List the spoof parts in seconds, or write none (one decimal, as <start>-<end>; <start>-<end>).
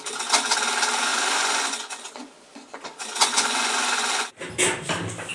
1.1-4.3